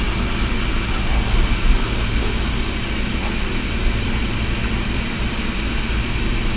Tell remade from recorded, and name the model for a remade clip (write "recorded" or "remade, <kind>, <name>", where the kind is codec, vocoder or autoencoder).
recorded